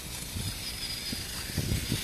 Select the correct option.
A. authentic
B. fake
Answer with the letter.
A